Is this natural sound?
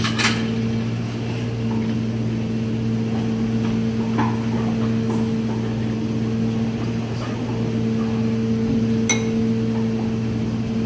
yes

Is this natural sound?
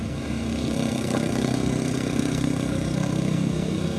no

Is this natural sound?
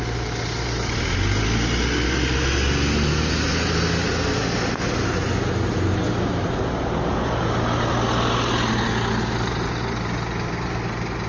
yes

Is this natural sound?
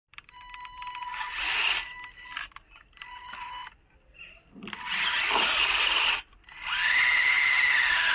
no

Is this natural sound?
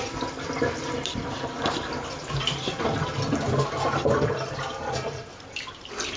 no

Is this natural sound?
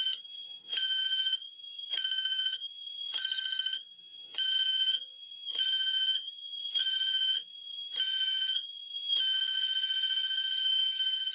no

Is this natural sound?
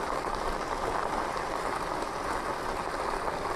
yes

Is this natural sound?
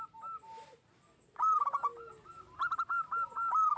yes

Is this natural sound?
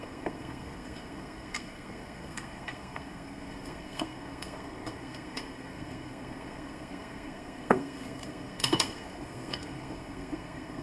no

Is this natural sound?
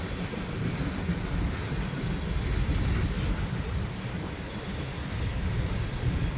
yes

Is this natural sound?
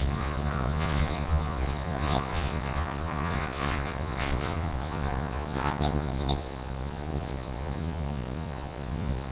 no